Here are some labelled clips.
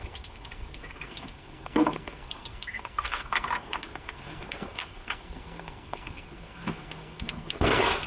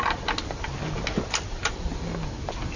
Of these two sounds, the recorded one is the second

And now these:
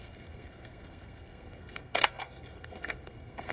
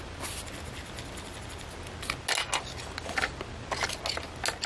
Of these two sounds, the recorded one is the second